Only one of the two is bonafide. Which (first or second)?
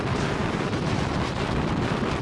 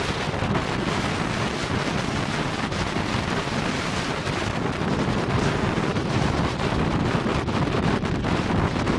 first